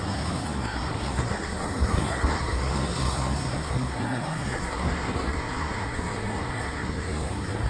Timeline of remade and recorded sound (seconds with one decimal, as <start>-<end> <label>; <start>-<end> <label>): 0.0-7.7 remade